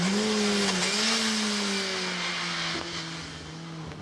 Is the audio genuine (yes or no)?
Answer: yes